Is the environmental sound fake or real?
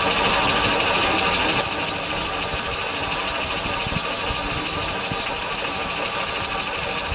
real